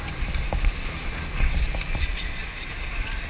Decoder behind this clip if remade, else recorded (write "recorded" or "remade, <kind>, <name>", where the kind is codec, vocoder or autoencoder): recorded